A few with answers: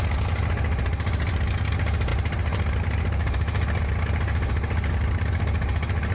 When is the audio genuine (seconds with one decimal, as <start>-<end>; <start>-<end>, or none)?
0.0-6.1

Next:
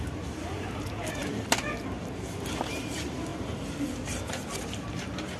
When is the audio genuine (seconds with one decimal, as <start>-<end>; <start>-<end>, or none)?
1.2-2.6; 3.3-4.9

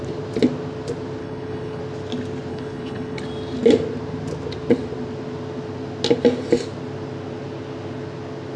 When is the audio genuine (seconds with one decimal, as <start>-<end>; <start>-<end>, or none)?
0.0-1.2; 1.8-2.5; 3.2-8.6